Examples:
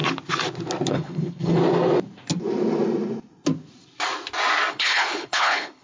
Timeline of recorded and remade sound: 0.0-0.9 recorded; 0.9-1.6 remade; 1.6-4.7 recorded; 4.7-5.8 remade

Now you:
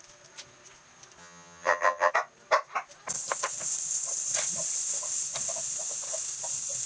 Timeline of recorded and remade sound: 0.0-1.2 recorded; 1.2-2.1 remade; 2.1-6.9 recorded

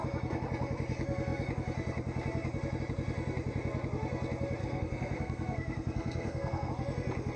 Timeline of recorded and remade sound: 0.0-4.6 recorded; 4.6-6.7 remade; 6.7-7.4 recorded

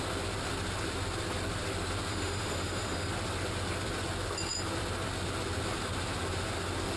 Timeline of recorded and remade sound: 0.0-2.1 recorded; 2.1-3.1 remade; 3.1-7.0 recorded

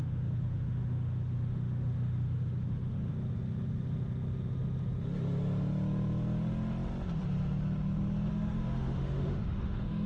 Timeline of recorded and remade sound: 0.0-3.1 remade; 3.1-8.3 recorded; 8.3-10.1 remade

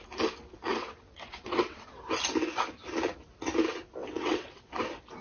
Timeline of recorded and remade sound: 0.0-0.7 recorded; 0.7-2.0 remade; 2.0-4.0 recorded; 4.0-4.7 remade; 4.7-5.2 recorded